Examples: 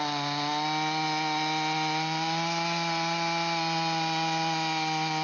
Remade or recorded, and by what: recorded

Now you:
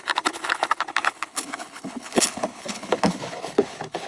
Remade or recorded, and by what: remade, codec, HILCodec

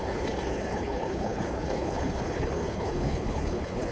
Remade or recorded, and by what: remade, codec, HILCodec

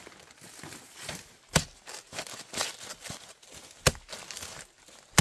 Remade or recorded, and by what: recorded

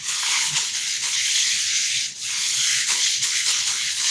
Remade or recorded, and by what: remade, codec, HILCodec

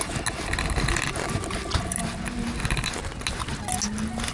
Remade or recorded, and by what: recorded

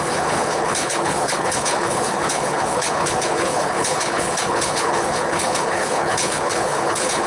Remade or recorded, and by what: remade, codec, HILCodec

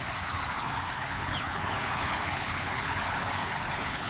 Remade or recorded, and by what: remade, codec, HILCodec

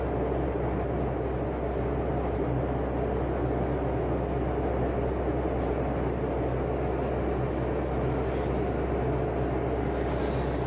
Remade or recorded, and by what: recorded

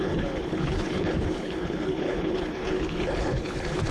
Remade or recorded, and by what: remade, codec, HILCodec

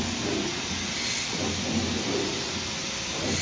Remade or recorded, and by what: recorded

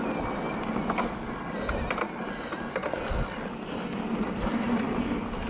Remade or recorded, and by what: recorded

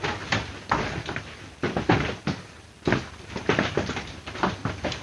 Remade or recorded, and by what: recorded